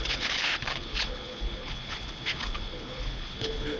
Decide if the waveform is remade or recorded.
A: remade